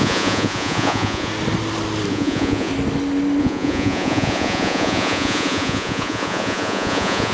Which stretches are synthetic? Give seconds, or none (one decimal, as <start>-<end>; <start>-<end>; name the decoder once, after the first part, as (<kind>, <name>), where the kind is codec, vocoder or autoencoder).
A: 0.0-1.3 (vocoder, Vocos); 2.1-2.7; 3.4-7.3